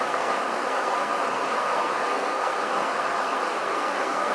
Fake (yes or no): yes